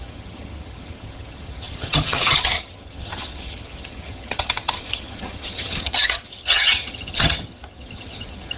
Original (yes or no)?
no